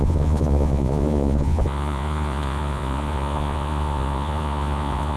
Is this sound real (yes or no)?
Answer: no